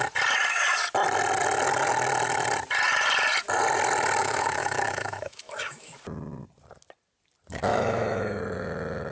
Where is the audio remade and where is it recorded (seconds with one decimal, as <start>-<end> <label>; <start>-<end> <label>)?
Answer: 0.0-4.2 recorded; 4.2-5.9 remade; 5.9-7.7 recorded; 7.7-8.4 remade; 8.4-9.1 recorded